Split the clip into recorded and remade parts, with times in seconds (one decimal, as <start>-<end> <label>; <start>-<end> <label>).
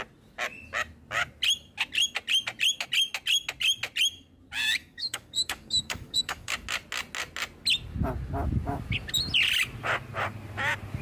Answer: 0.0-4.8 recorded; 4.8-6.5 remade; 6.5-11.0 recorded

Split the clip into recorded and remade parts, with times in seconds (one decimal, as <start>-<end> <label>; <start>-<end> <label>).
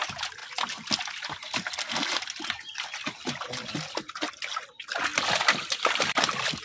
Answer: 0.0-6.6 recorded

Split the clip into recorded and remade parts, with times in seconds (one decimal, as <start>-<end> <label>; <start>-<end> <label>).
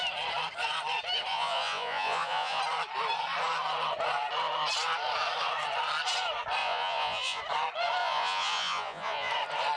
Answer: 0.0-1.3 recorded; 1.3-2.6 remade; 2.6-6.6 recorded; 6.6-7.4 remade; 7.4-8.0 recorded; 8.0-9.3 remade; 9.3-9.8 recorded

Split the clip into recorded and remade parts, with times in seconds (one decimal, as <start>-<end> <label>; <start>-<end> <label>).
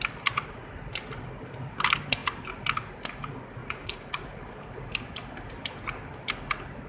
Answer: 0.0-3.6 recorded; 3.6-4.2 remade; 4.2-6.9 recorded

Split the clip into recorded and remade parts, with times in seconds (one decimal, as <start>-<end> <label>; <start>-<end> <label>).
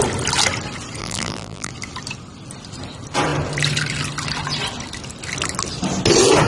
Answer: 0.0-1.0 recorded; 1.0-1.7 remade; 1.7-6.5 recorded